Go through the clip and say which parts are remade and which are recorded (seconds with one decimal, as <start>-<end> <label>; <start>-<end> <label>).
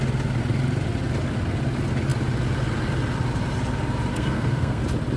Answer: 0.0-4.1 recorded; 4.1-4.8 remade; 4.8-5.2 recorded